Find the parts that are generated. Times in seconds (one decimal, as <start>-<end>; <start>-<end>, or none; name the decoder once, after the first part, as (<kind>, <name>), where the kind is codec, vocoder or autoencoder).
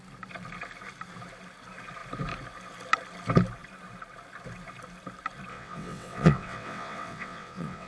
5.5-7.9 (vocoder, WaveNeXt)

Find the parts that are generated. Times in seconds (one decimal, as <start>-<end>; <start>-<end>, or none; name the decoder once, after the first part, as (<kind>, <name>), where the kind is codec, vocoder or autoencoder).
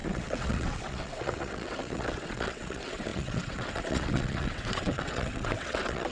0.0-6.1 (vocoder, WaveNeXt)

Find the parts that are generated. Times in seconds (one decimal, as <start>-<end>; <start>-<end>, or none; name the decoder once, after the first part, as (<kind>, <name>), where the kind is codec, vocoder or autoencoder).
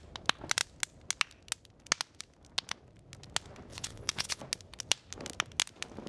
3.7-4.4 (vocoder, WaveNeXt)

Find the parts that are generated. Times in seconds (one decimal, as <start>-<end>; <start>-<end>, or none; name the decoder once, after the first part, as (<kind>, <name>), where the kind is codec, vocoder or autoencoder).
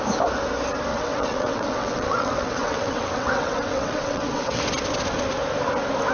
0.9-4.6 (vocoder, WaveNeXt)